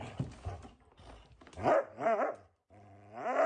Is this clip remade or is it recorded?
recorded